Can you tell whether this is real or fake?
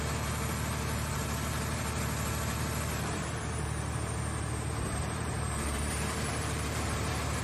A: fake